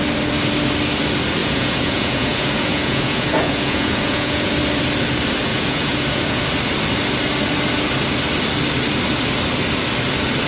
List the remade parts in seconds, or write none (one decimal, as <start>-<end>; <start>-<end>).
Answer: 1.4-4.5; 5.5-6.4